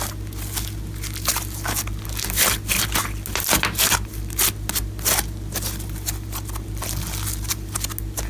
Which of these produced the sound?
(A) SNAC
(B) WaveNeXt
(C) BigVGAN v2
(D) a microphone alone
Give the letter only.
D